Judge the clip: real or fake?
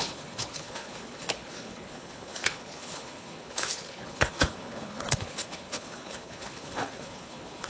fake